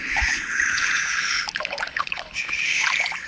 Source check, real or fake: fake